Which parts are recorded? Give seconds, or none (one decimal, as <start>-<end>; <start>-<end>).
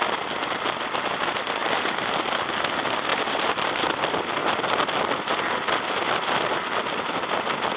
0.0-1.6; 2.4-3.1; 3.7-7.8